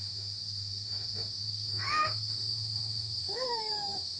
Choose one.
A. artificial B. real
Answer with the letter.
A